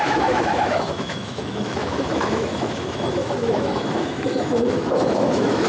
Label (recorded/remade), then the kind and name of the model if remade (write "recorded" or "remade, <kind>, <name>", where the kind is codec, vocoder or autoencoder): remade, autoencoder, DAC-VAE